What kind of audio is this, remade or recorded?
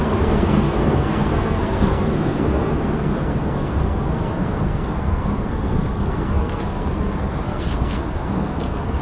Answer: remade